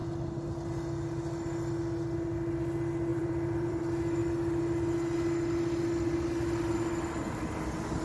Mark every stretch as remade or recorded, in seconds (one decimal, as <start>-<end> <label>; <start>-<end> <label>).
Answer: 0.0-3.1 recorded; 3.1-3.8 remade; 3.8-8.0 recorded